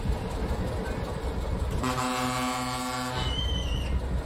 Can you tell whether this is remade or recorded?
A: recorded